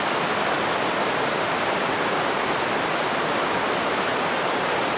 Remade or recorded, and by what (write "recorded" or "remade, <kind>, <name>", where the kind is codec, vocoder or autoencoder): recorded